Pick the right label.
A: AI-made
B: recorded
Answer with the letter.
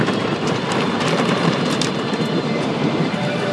A